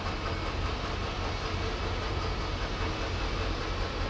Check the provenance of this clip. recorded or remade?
recorded